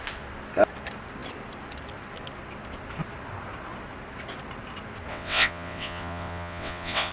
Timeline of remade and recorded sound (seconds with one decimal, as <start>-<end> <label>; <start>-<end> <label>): 0.0-5.1 recorded; 5.1-7.1 remade